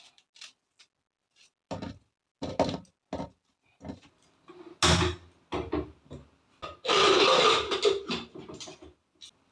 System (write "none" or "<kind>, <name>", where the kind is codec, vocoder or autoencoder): none